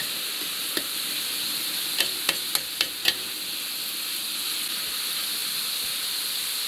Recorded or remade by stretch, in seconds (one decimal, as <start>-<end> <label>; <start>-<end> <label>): 0.0-6.7 recorded